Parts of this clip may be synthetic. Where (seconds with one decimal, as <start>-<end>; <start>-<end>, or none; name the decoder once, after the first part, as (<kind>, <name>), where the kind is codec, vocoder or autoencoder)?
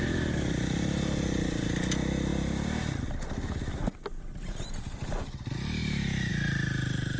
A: 2.3-2.8 (vocoder, BigVGAN v2); 5.8-6.3